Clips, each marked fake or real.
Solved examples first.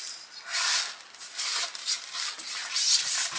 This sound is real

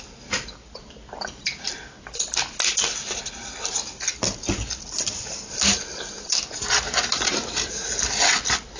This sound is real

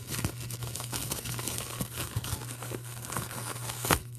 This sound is fake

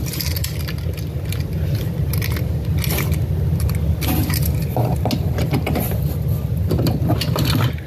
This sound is real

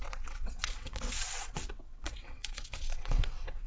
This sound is fake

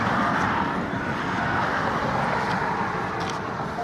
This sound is real